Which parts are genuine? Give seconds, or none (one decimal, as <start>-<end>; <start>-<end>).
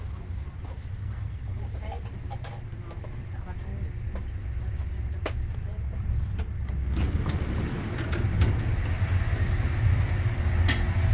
0.0-1.0; 1.6-11.1